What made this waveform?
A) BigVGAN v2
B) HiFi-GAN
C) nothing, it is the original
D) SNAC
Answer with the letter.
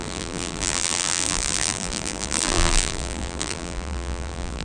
A